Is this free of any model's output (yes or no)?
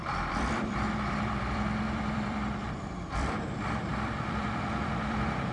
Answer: no